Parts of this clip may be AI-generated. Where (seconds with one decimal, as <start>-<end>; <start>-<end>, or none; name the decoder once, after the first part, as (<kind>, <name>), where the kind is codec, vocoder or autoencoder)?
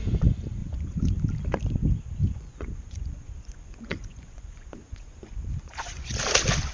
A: 0.6-1.1 (vocoder, Vocos); 2.2-6.2